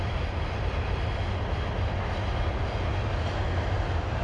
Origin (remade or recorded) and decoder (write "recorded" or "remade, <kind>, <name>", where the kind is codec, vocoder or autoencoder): recorded